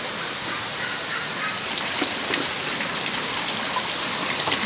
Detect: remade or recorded recorded